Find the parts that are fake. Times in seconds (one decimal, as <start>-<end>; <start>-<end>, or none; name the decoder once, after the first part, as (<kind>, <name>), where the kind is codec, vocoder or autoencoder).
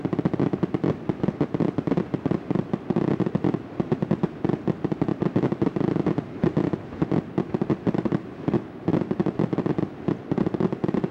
8.9-11.1 (vocoder, BigVGAN v2)